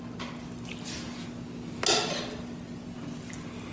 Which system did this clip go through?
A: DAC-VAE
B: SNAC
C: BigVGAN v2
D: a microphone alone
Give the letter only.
D